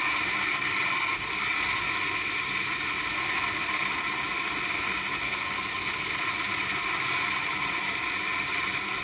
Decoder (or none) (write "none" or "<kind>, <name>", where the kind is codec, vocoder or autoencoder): none